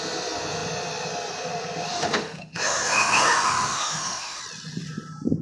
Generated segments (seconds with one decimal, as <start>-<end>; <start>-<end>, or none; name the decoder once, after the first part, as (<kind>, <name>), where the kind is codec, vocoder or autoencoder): 1.9-4.4 (autoencoder, DAC-VAE)